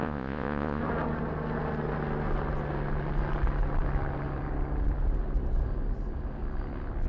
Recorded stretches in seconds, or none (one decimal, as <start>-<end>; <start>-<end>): 0.8-7.1